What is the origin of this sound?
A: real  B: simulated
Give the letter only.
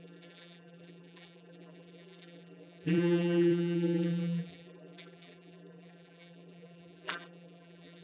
B